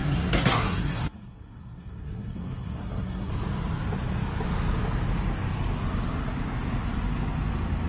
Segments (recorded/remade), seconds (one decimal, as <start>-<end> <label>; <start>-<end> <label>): 0.0-3.3 remade; 3.3-7.9 recorded